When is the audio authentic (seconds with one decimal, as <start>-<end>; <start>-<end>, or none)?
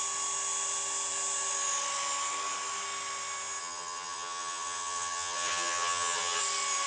0.0-3.6; 6.4-6.9